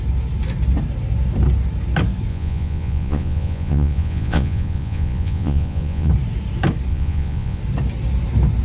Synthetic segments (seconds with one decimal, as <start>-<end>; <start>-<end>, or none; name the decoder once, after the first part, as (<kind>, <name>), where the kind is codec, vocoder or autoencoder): 2.3-6.1 (vocoder, Vocos); 6.9-7.6